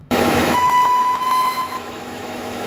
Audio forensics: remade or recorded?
remade